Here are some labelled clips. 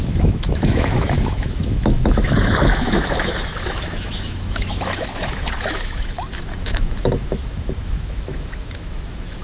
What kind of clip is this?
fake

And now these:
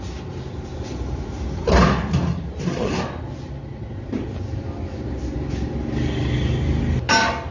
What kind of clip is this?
real